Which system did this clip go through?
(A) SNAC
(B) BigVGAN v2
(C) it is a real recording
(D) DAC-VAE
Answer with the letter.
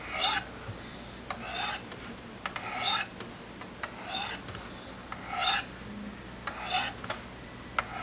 C